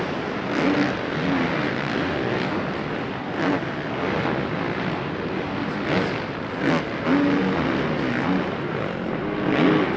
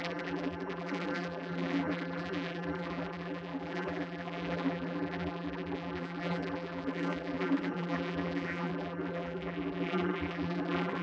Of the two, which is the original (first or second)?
first